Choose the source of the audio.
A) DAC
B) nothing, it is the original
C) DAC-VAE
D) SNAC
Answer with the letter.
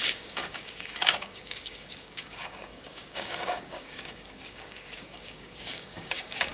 A